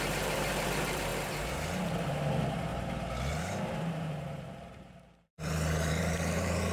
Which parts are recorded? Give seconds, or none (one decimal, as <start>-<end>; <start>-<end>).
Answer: 1.1-2.0; 2.7-3.3